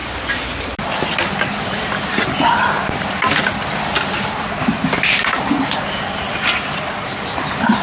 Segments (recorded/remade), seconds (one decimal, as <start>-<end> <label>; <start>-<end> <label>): 0.0-7.8 recorded

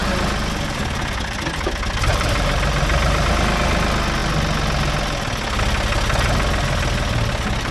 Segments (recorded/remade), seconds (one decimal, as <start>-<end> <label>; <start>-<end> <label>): 0.0-2.1 recorded; 2.1-3.3 remade; 3.3-7.7 recorded

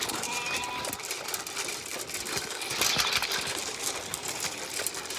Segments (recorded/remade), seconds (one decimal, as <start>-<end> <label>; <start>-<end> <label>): 0.0-1.9 remade; 1.9-5.2 recorded

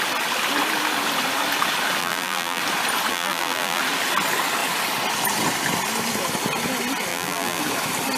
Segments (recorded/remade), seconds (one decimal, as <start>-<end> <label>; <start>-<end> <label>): 0.0-2.0 recorded; 2.0-2.6 remade; 2.6-3.1 recorded; 3.1-3.8 remade; 3.8-7.1 recorded; 7.1-7.6 remade; 7.6-8.2 recorded

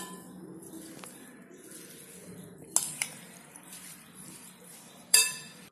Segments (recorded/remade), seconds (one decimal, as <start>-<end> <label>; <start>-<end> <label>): 0.0-0.5 remade; 0.5-2.9 recorded; 2.9-5.7 remade

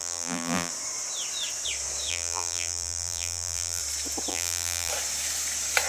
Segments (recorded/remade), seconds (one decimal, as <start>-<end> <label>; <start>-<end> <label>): 0.0-0.7 remade; 0.7-2.1 recorded; 2.1-3.8 remade; 3.8-4.3 recorded; 4.3-4.9 remade; 4.9-5.9 recorded